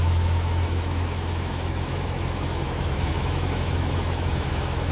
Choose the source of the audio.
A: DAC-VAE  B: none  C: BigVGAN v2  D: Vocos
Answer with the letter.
A